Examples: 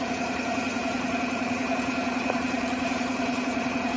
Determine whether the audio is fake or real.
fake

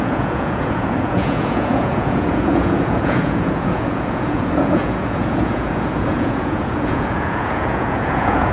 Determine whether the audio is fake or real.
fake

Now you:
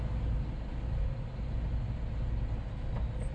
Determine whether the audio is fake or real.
real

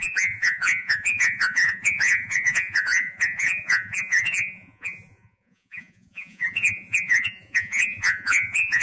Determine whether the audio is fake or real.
fake